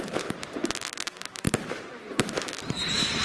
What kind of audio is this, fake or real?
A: fake